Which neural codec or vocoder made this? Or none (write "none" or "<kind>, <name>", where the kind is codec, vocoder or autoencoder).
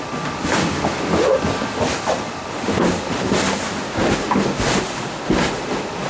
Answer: none